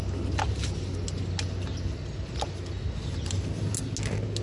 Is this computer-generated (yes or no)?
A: no